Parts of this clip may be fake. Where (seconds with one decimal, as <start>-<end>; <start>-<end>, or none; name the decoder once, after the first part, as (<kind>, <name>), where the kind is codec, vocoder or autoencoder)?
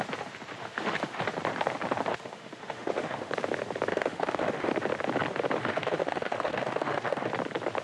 0.6-1.2 (autoencoder, DAC-VAE); 2.1-3.3; 3.9-4.7; 5.6-7.3